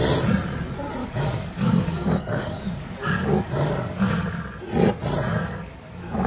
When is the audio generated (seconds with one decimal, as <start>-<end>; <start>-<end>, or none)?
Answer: 1.0-4.4; 5.3-6.3